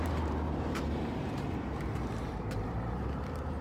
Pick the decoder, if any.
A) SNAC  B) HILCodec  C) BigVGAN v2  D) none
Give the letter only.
C